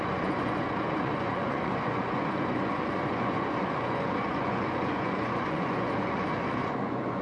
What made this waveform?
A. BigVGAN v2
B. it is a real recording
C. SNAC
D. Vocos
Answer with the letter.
D